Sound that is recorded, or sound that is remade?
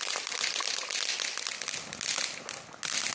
recorded